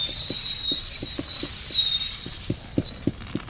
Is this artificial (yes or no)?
yes